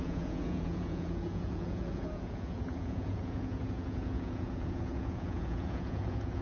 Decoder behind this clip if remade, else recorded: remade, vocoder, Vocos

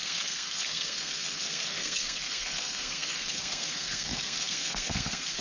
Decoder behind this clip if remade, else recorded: remade, codec, SNAC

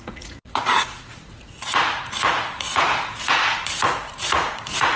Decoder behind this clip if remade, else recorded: remade, vocoder, Vocos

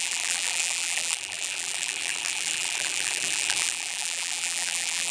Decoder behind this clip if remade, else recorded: remade, vocoder, BigVGAN v2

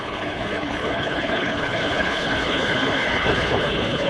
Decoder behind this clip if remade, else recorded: remade, codec, HILCodec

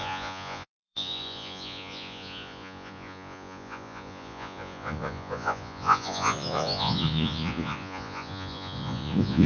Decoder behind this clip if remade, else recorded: remade, vocoder, Vocos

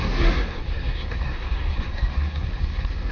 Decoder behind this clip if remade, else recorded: remade, codec, SNAC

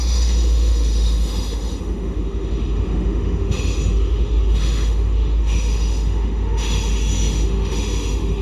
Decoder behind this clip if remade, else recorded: remade, autoencoder, DAC-VAE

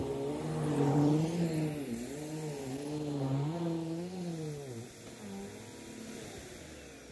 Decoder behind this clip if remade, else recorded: recorded